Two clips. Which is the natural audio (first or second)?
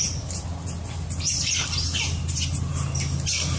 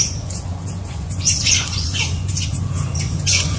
first